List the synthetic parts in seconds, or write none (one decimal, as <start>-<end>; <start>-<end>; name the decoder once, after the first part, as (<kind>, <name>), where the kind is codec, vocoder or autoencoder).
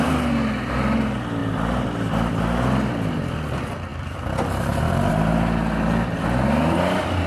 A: none